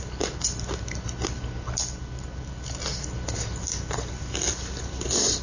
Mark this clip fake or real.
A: real